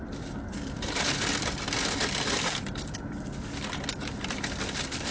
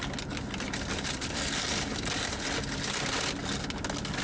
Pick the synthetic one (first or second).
first